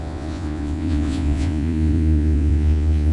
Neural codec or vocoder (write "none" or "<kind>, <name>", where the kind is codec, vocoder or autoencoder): vocoder, Vocos